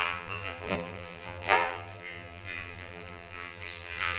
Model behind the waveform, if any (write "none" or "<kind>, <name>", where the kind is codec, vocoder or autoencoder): vocoder, BigVGAN v2